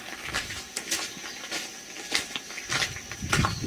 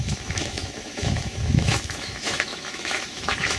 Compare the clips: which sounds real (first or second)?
first